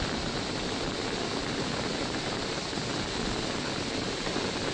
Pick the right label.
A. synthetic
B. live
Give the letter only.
B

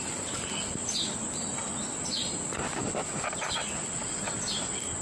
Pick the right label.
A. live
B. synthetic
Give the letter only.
A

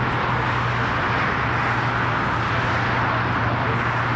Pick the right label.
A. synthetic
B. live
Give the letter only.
B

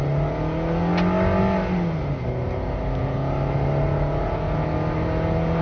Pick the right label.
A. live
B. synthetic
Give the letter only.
A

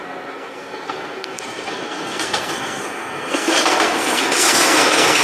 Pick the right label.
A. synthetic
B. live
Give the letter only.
A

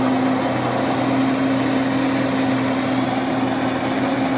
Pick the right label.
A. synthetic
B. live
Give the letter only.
B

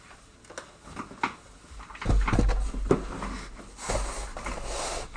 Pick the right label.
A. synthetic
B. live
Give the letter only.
B